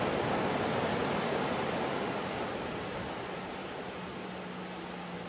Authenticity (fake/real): real